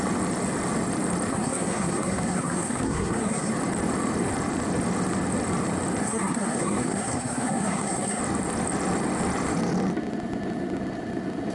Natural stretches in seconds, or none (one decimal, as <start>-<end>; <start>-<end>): 0.0-1.3; 3.5-6.0; 8.2-11.5